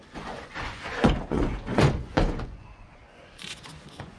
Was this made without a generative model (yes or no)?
no